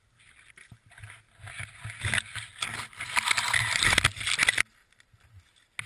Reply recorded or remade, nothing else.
recorded